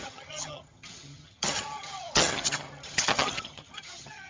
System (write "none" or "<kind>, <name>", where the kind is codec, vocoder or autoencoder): vocoder, HiFi-GAN